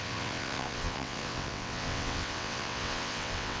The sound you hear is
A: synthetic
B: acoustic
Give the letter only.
A